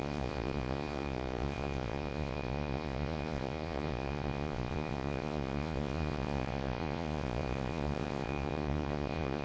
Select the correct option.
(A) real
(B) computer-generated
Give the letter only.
B